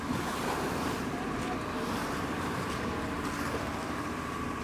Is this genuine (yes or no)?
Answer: no